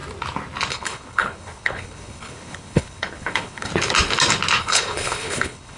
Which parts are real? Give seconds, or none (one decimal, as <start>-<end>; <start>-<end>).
0.0-0.7; 3.7-4.6